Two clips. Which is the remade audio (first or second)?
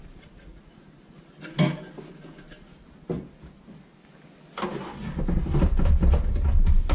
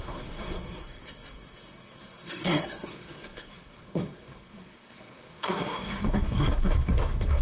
second